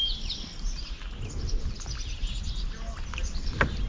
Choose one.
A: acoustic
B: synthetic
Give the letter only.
A